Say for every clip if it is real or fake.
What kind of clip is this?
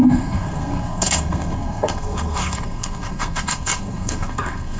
fake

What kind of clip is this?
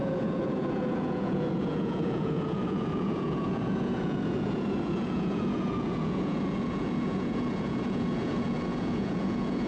fake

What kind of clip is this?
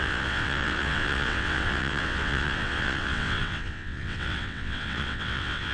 fake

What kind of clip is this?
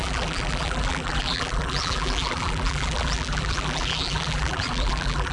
fake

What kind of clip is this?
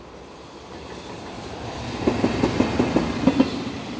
real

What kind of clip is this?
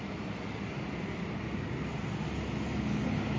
real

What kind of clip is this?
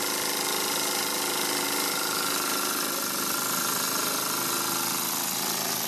real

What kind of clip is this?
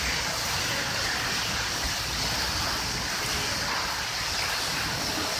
real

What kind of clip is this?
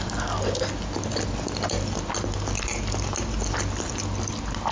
real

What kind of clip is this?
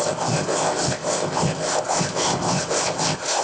fake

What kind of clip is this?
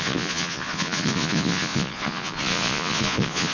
fake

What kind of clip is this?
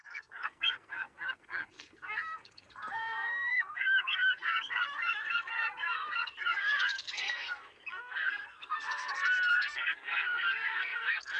fake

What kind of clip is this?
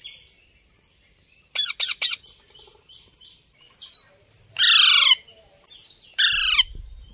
fake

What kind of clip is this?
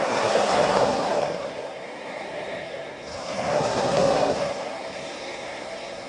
fake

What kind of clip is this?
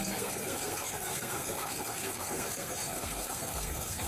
fake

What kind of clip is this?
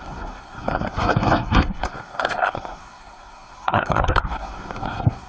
fake